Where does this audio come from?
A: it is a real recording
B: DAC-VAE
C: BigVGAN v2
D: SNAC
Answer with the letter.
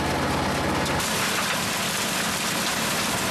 A